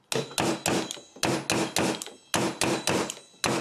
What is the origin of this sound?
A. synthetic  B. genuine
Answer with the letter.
B